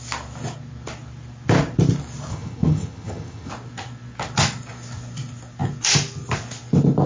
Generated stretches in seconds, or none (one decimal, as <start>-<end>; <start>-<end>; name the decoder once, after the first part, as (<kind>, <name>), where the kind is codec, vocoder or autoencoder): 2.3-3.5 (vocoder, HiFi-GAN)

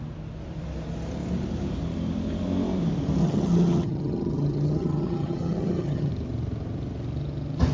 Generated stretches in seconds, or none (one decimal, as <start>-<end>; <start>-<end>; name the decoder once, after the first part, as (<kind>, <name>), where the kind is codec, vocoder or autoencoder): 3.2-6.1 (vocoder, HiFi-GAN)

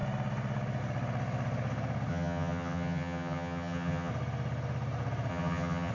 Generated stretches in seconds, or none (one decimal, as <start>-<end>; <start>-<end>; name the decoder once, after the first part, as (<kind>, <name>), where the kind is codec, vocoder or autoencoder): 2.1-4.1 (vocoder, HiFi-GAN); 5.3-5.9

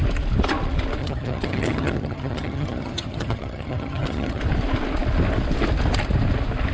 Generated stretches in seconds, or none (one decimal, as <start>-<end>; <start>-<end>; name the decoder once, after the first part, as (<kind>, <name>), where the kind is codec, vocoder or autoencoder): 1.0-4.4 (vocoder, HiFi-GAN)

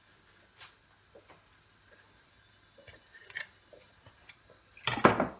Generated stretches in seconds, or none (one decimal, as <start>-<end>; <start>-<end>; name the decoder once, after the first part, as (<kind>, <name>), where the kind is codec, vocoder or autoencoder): none